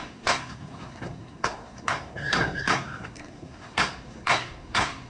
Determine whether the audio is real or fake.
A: fake